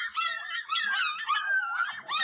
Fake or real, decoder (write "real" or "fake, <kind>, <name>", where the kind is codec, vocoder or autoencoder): real